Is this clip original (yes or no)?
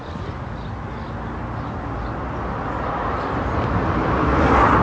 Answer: yes